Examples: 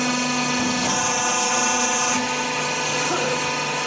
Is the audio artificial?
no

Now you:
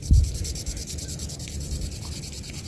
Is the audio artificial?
no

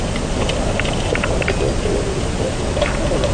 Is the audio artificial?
no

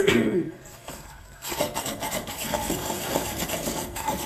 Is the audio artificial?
yes